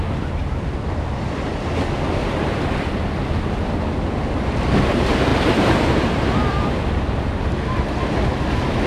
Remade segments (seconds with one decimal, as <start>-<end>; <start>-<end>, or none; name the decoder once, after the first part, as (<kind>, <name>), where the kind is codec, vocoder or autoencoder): 5.3-6.8 (vocoder, BigVGAN v2)